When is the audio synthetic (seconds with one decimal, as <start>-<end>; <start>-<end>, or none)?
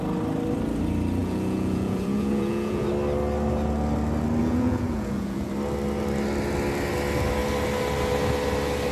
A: 1.2-2.9; 4.4-5.5